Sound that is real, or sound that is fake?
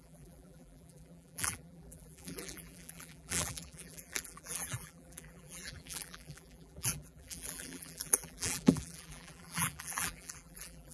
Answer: fake